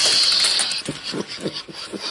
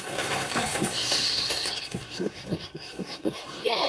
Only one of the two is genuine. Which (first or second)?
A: first